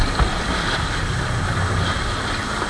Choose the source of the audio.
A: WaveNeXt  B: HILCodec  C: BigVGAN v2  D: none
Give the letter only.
D